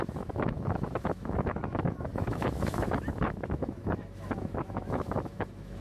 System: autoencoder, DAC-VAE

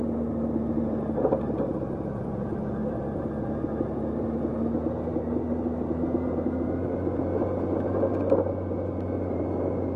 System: none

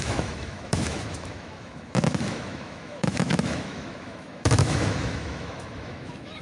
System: autoencoder, DAC-VAE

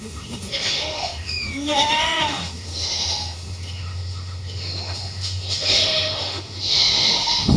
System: autoencoder, DAC-VAE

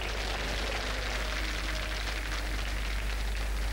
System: none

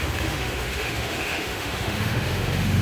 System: autoencoder, DAC-VAE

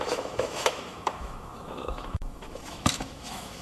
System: autoencoder, DAC-VAE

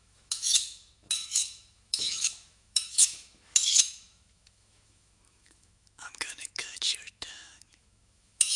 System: autoencoder, DAC-VAE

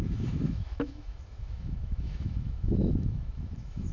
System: autoencoder, DAC-VAE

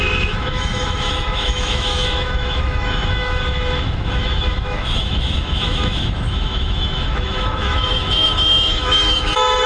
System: autoencoder, DAC-VAE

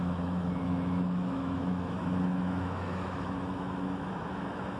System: autoencoder, DAC-VAE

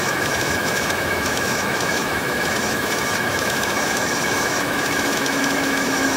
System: autoencoder, DAC-VAE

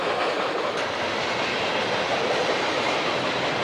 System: none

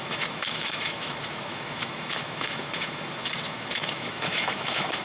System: autoencoder, DAC-VAE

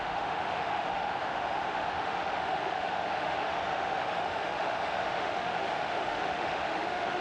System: autoencoder, DAC-VAE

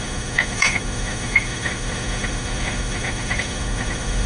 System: autoencoder, DAC-VAE